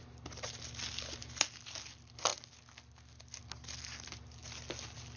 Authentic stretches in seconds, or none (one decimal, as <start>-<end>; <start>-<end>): 0.0-5.2